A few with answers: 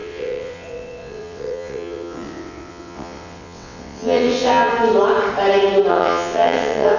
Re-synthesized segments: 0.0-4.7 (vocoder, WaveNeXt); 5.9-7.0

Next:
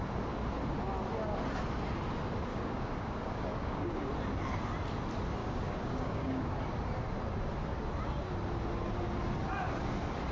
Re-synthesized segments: 2.5-4.1 (codec, DAC); 5.4-6.4

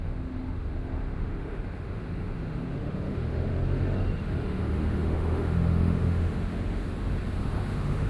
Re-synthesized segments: 0.0-3.5 (autoencoder, DAC-VAE); 4.2-8.1

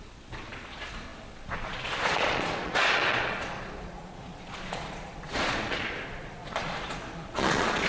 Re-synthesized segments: 0.0-7.9 (vocoder, Vocos)

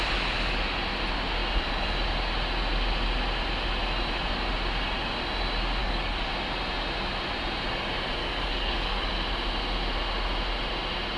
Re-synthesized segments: 5.8-6.3 (codec, DAC); 8.2-9.1

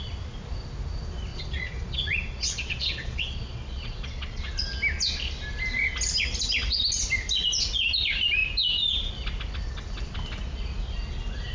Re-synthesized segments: 1.3-4.5 (vocoder, Vocos)

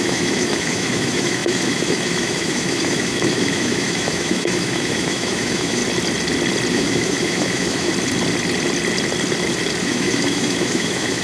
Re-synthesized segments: 0.0-5.8 (autoencoder, DAC-VAE); 6.7-7.9; 9.8-11.2

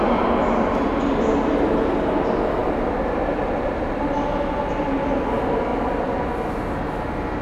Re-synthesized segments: 2.6-4.8 (vocoder, BigVGAN v2)